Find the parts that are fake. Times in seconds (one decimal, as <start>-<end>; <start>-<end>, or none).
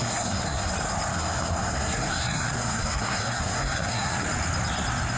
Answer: 0.0-0.7; 1.1-4.2